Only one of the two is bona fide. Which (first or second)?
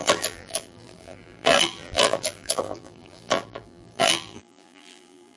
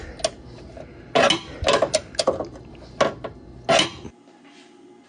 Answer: second